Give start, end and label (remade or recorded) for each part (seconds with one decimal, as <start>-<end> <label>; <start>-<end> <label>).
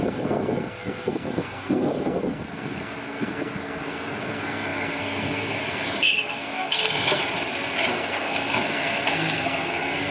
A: 0.0-7.2 remade; 7.2-7.9 recorded; 7.9-10.1 remade